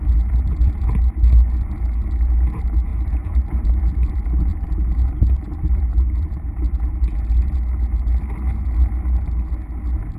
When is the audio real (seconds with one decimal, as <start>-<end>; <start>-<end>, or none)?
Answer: 0.0-2.9; 3.8-4.5; 6.9-10.2